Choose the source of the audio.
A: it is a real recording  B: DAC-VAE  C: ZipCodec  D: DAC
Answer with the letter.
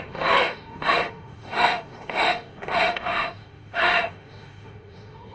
B